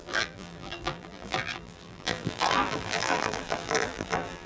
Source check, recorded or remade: remade